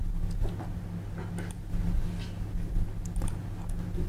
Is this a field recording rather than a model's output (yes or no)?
yes